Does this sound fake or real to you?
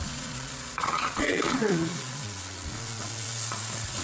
fake